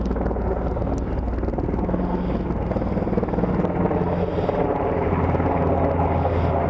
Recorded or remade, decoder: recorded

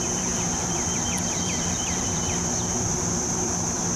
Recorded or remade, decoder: remade, vocoder, BigVGAN v2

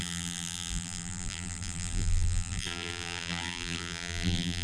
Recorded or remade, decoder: remade, vocoder, BigVGAN v2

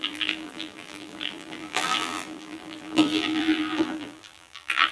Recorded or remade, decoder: remade, vocoder, BigVGAN v2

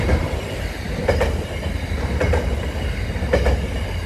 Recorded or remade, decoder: recorded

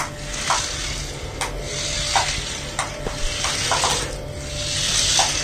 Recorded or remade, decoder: recorded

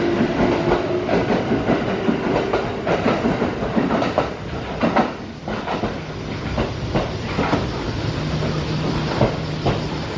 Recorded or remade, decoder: recorded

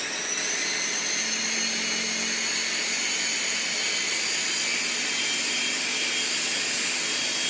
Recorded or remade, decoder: recorded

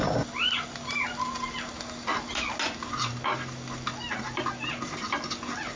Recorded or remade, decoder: recorded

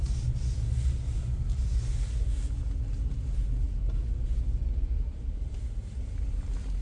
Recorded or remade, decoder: recorded